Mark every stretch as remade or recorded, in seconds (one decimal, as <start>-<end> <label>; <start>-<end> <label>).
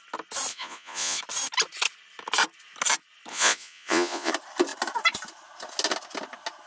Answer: 0.0-0.5 recorded; 0.5-1.2 remade; 1.2-3.3 recorded; 3.3-4.3 remade; 4.3-6.7 recorded